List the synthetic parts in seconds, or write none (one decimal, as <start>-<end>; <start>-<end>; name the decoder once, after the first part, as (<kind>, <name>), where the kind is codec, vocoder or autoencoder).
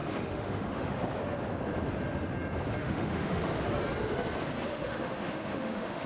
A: 0.0-0.9 (autoencoder, DAC-VAE); 2.8-3.4; 4.7-6.1